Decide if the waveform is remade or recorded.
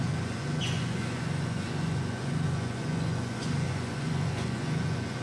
remade